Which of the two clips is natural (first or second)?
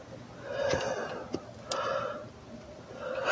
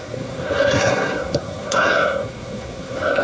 first